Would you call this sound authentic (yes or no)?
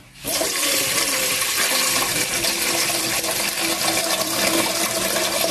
no